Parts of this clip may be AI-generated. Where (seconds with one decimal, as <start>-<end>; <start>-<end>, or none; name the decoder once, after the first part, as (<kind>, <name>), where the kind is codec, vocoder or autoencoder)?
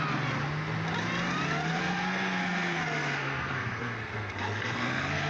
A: 1.8-5.3 (codec, SNAC)